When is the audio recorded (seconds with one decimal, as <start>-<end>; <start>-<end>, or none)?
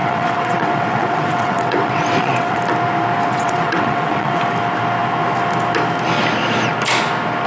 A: 2.6-3.3; 4.4-7.5